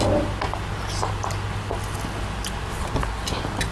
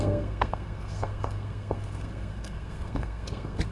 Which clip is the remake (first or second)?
second